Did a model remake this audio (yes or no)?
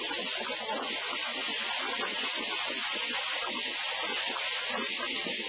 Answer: no